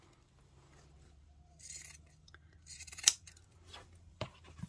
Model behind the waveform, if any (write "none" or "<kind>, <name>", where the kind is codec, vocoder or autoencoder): vocoder, BigVGAN v2